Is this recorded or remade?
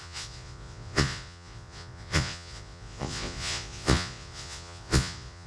remade